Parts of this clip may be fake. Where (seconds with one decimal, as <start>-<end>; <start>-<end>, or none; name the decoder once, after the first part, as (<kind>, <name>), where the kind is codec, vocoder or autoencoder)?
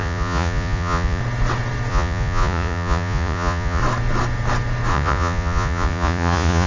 0.0-1.2 (vocoder, Vocos); 1.9-3.8; 4.9-6.7